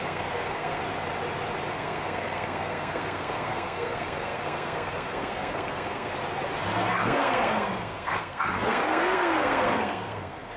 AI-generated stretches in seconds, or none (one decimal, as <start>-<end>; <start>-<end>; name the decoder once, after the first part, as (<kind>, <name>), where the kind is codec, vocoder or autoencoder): 0.0-0.8 (codec, SNAC); 1.7-6.1; 6.9-10.6